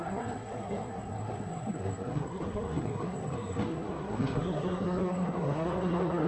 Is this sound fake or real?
fake